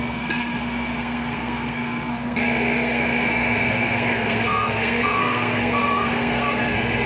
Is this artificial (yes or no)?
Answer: yes